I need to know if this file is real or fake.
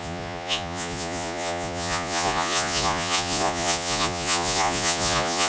fake